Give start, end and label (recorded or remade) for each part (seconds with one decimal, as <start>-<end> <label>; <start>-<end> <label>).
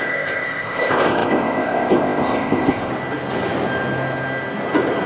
0.0-2.9 remade; 2.9-5.1 recorded